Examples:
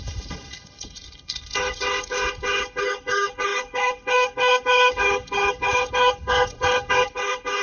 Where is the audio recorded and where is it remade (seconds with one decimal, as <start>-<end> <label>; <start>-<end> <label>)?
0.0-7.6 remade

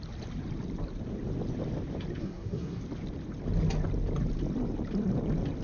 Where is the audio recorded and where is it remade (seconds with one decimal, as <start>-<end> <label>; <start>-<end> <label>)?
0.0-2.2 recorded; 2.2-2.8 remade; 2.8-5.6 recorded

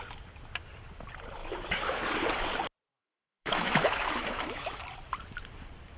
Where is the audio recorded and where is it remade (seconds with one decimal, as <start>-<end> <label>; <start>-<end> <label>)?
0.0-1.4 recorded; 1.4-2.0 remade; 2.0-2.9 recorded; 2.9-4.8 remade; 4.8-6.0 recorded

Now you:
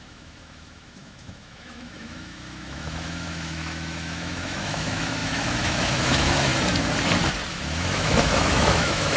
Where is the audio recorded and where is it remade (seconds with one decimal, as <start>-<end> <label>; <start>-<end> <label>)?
0.0-6.5 remade; 6.5-7.5 recorded; 7.5-9.2 remade

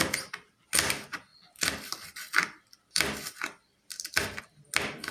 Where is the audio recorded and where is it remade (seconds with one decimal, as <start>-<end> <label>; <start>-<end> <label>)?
0.0-1.3 recorded; 1.3-4.4 remade; 4.4-5.1 recorded

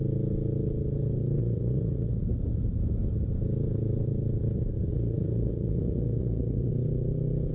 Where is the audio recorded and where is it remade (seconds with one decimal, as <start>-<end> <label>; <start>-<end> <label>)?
0.0-1.4 recorded; 1.4-2.2 remade; 2.2-4.9 recorded; 4.9-6.7 remade; 6.7-7.5 recorded

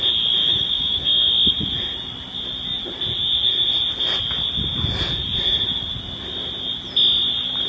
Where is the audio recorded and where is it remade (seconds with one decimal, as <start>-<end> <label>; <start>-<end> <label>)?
0.0-0.4 recorded; 0.4-1.3 remade; 1.3-7.7 recorded